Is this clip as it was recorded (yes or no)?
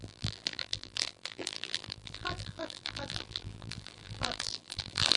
no